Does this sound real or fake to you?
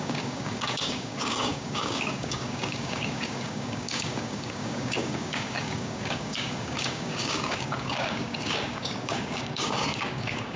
fake